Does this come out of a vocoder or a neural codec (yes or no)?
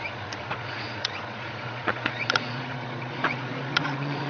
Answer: yes